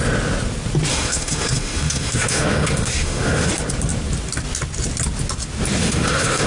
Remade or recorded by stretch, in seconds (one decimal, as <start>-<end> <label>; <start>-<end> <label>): 0.0-0.9 recorded; 0.9-3.5 remade; 3.5-5.8 recorded; 5.8-6.5 remade